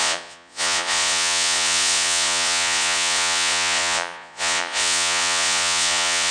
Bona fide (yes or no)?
no